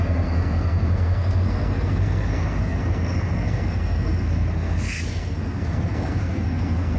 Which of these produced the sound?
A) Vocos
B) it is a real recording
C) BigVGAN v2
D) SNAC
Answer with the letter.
D